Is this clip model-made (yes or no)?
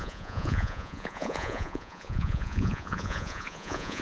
yes